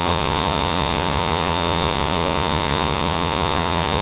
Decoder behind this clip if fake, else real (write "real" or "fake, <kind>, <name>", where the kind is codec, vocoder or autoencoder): fake, vocoder, Vocos